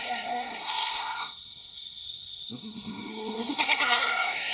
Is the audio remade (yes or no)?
yes